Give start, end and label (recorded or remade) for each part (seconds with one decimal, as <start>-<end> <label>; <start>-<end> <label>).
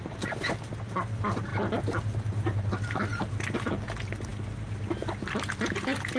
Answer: 0.0-6.2 recorded